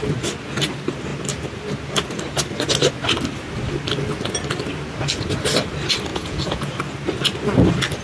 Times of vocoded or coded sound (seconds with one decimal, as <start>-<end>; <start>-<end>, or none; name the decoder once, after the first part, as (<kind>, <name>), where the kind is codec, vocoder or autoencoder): 6.1-6.7 (vocoder, Vocos)